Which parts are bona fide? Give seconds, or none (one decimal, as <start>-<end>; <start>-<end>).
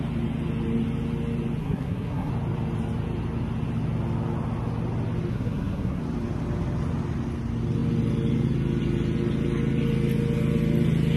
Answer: 0.0-1.6; 2.3-5.3; 6.0-11.2